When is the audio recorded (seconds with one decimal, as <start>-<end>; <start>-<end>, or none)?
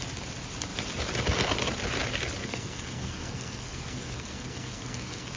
0.0-2.4